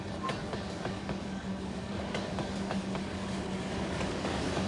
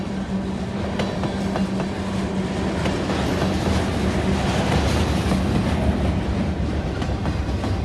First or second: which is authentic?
second